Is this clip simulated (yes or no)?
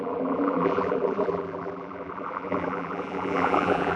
yes